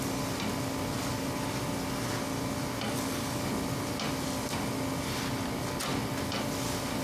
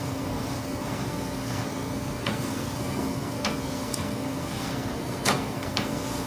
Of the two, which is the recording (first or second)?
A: first